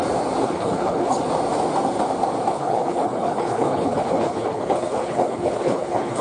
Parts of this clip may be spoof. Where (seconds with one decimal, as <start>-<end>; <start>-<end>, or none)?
0.4-1.2; 2.5-6.2